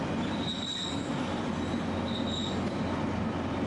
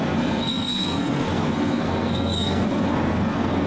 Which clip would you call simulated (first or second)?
second